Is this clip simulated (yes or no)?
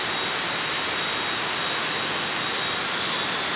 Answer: no